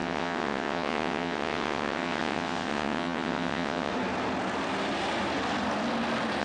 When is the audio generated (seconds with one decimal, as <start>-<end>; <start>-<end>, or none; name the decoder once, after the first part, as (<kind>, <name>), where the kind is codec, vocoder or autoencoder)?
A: 0.0-3.9 (vocoder, WaveNeXt)